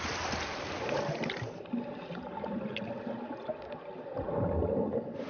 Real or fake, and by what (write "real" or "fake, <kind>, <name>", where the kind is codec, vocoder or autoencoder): real